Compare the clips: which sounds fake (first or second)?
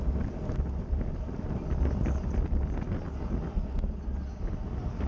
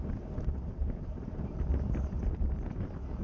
second